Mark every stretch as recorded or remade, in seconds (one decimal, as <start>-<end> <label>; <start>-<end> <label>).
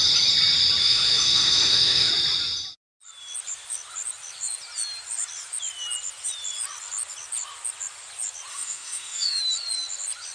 0.0-0.8 recorded; 0.8-2.1 remade; 2.1-8.5 recorded; 8.5-9.4 remade; 9.4-10.3 recorded